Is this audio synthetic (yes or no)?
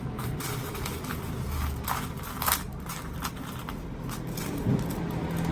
no